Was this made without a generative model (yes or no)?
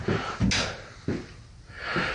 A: yes